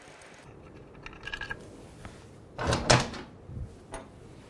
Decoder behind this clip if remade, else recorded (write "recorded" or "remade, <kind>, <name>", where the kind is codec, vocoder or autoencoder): recorded